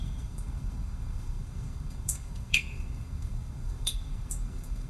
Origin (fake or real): fake